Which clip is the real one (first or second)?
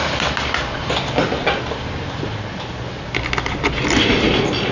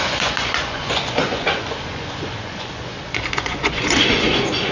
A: first